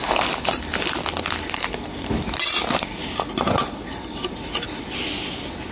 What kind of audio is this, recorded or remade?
recorded